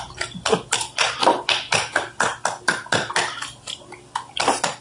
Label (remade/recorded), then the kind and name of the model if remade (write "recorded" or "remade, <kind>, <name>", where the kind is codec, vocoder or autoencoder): remade, vocoder, BigVGAN v2